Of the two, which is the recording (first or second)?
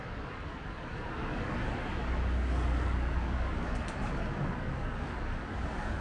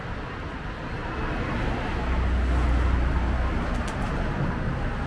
second